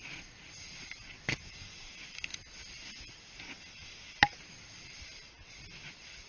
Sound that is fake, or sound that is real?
real